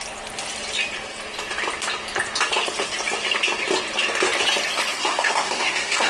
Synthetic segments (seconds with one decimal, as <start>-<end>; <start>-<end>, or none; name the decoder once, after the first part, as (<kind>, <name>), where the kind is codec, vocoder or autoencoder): 4.9-6.1 (codec, SNAC)